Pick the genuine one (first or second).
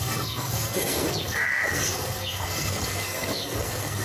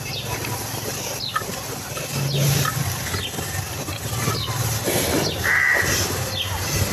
second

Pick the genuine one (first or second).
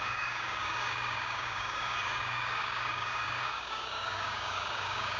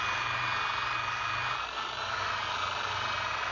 second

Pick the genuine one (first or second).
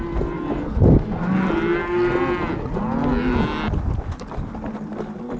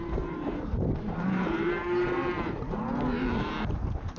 first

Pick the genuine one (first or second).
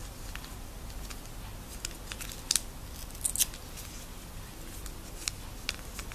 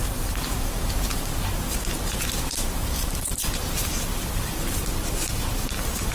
first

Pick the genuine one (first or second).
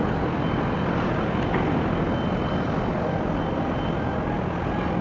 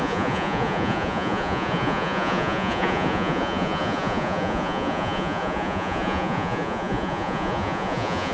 first